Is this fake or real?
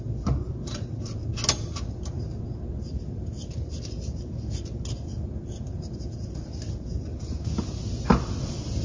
real